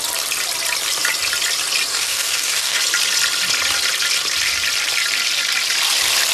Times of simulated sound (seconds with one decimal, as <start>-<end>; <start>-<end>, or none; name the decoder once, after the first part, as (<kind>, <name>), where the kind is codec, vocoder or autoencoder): 1.9-2.8 (codec, DAC)